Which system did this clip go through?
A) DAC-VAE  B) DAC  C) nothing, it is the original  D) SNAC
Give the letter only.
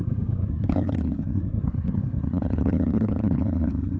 D